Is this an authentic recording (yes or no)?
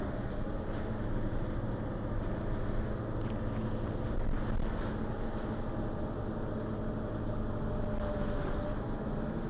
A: yes